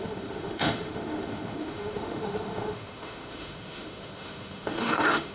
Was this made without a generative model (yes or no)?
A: no